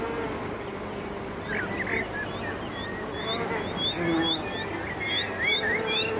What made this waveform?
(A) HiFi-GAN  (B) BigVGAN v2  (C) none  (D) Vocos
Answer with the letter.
C